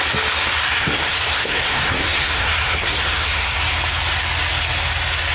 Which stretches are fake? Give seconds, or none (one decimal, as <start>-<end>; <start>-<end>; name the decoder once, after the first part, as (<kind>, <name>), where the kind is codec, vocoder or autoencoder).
0.6-3.6 (codec, SNAC)